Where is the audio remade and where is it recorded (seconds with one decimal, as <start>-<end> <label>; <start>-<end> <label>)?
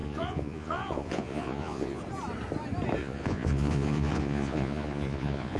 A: 0.0-2.0 remade; 2.0-3.0 recorded; 3.0-5.6 remade